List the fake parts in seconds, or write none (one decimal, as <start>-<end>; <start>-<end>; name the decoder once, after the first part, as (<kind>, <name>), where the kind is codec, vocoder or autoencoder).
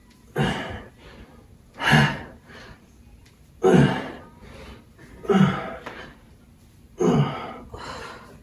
2.4-8.4 (vocoder, BigVGAN v2)